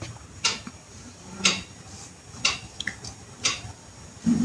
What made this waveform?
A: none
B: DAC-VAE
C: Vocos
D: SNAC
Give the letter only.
A